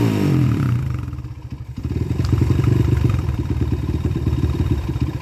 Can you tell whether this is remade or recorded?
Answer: remade